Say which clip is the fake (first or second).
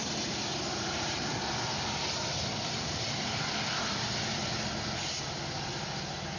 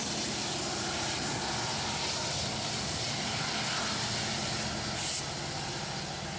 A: first